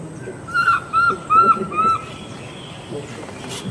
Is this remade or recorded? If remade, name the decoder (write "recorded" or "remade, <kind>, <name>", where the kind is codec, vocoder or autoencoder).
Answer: recorded